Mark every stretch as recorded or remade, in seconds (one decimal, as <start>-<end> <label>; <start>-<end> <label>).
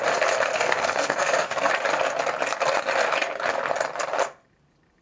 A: 0.0-0.5 recorded; 0.5-1.7 remade; 1.7-5.0 recorded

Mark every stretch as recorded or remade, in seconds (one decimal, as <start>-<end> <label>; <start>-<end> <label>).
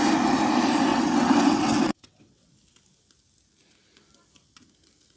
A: 0.0-0.9 recorded; 0.9-2.5 remade; 2.5-5.2 recorded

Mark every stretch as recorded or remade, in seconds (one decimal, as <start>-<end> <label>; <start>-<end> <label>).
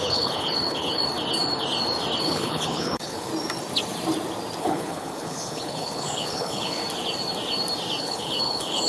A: 0.0-1.0 remade; 1.0-2.2 recorded; 2.2-3.3 remade; 3.3-4.6 recorded; 4.6-6.8 remade; 6.8-8.0 recorded; 8.0-8.9 remade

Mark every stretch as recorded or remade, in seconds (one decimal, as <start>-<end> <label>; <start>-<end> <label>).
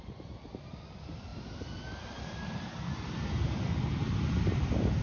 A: 0.0-1.3 remade; 1.3-2.8 recorded; 2.8-5.0 remade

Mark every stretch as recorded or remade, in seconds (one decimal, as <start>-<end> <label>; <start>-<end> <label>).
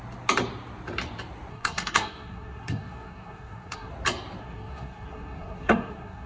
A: 0.0-1.5 recorded; 1.5-3.9 remade; 3.9-4.4 recorded; 4.4-6.3 remade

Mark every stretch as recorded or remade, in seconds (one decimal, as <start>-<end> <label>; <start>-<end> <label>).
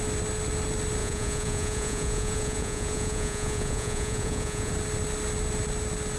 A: 0.0-1.0 recorded; 1.0-4.7 remade; 4.7-6.2 recorded